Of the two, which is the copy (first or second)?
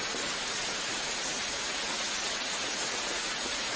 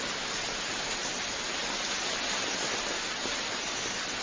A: first